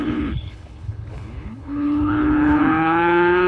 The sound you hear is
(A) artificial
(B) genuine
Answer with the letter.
A